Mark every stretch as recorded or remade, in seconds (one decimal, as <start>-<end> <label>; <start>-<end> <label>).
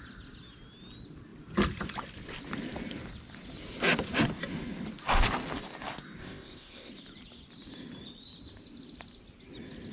0.0-6.2 recorded; 6.2-6.9 remade; 6.9-9.9 recorded